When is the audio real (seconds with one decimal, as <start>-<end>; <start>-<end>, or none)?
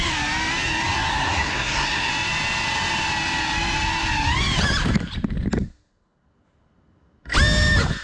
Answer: 0.0-1.1; 2.1-8.0